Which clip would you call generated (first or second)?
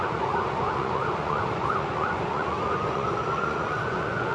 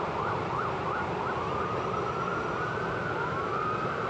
first